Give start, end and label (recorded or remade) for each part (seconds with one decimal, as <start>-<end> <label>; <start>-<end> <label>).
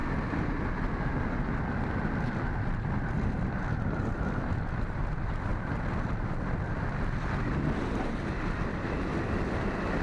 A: 0.0-3.7 recorded; 3.7-4.5 remade; 4.5-10.0 recorded